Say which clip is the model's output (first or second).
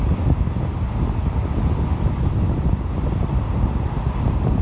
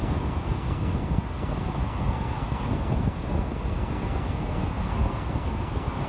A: second